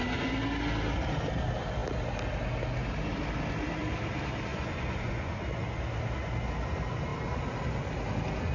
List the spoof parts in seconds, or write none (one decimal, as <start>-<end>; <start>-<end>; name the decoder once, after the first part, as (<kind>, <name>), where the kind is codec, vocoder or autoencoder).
4.5-5.3 (vocoder, Vocos)